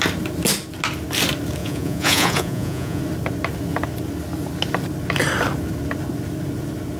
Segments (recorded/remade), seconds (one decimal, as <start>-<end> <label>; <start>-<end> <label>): 0.0-1.6 recorded; 1.6-3.0 remade; 3.0-7.0 recorded